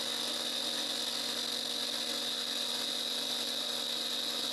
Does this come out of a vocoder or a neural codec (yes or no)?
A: no